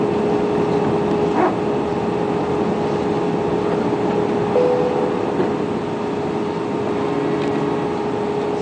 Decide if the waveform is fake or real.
real